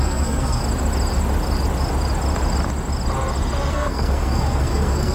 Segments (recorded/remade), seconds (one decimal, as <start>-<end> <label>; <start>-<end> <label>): 0.0-0.6 remade; 0.6-3.7 recorded; 3.7-5.1 remade